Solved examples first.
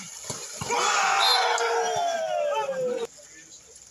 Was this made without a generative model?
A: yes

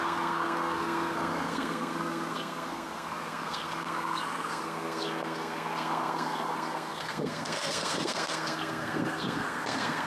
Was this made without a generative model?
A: no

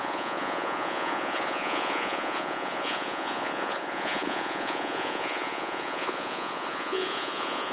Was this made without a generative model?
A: no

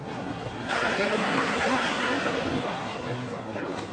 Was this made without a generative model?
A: no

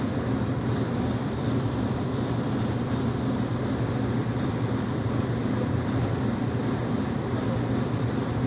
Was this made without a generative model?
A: no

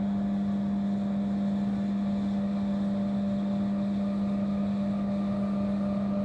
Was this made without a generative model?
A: yes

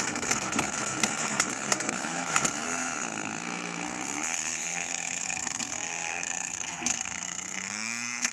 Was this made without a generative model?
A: no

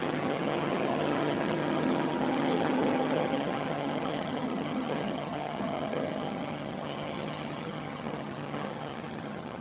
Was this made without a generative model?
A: no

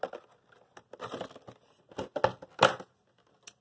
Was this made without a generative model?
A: yes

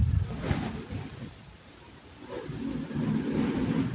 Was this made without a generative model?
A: yes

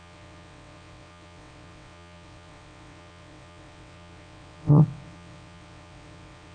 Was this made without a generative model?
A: no